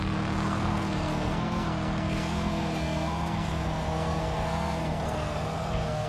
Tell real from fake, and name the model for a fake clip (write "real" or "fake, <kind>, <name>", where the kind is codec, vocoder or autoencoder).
fake, codec, SNAC